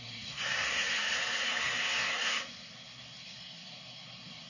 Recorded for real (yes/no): no